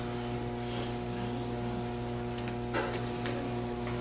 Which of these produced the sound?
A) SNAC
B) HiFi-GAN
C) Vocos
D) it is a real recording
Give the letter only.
D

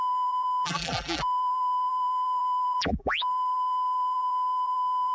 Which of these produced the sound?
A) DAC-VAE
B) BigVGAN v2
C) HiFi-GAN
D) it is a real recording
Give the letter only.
B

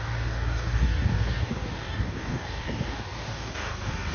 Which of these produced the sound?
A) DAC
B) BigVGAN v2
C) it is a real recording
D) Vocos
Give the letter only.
A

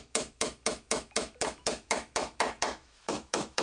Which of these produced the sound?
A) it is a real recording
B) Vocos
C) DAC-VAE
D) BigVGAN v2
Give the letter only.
C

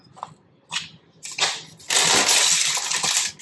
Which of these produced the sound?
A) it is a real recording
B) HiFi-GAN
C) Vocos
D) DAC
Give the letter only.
A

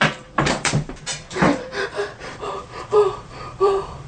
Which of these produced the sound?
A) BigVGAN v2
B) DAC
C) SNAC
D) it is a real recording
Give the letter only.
A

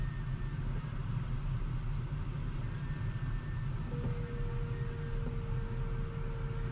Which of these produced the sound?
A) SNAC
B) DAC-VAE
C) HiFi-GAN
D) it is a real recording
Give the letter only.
D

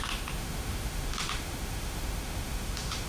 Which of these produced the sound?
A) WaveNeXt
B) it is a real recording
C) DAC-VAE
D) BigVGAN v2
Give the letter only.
C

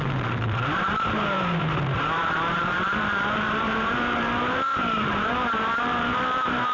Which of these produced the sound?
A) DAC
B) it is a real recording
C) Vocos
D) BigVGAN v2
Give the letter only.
D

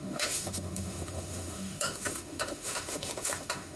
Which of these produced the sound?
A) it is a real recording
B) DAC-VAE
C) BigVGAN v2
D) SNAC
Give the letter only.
B